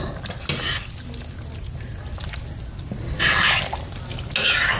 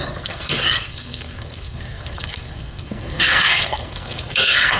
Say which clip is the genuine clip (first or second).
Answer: first